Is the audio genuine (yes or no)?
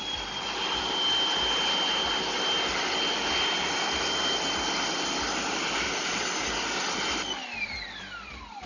yes